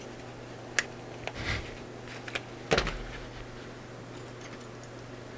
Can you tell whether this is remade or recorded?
recorded